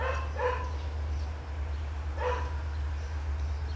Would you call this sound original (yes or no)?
yes